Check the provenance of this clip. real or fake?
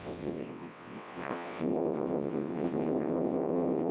fake